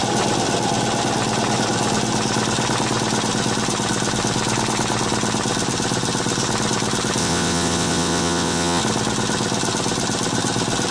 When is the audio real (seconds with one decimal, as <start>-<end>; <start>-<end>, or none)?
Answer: 0.0-7.2; 8.8-10.9